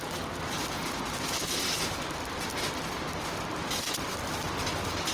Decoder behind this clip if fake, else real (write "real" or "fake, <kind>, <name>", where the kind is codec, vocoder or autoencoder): real